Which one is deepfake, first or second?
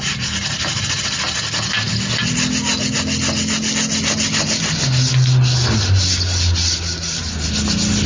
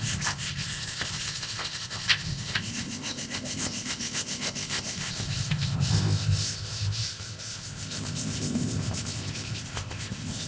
second